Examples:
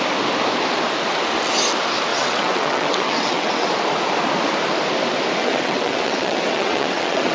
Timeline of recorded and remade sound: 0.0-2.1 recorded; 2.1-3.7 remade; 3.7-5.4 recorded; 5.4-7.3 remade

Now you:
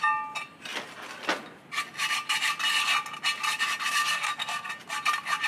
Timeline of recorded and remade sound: 0.0-4.1 recorded; 4.1-4.7 remade; 4.7-5.5 recorded

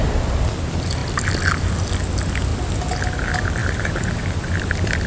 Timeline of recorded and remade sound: 0.0-3.6 recorded; 3.6-4.2 remade; 4.2-5.1 recorded